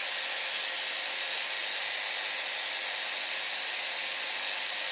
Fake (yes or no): no